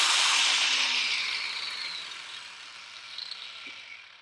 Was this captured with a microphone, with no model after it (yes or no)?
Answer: yes